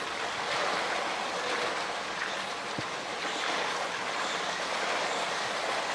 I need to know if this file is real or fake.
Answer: real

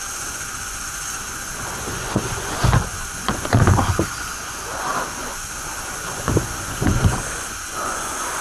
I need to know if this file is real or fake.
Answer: fake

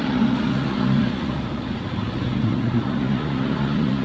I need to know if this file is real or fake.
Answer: fake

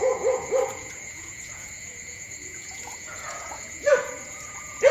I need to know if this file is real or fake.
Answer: fake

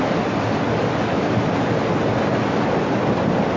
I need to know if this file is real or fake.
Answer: real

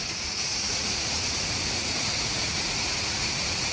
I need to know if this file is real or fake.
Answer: fake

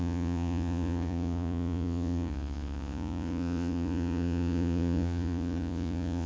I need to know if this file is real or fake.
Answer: fake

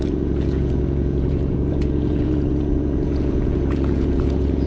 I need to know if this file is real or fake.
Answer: fake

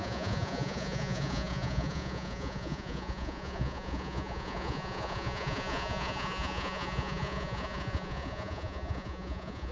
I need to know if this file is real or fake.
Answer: fake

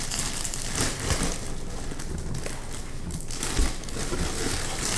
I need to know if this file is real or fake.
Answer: real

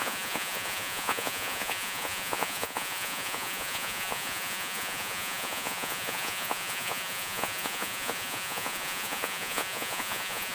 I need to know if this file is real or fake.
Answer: fake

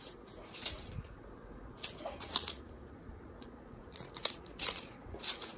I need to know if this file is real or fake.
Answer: fake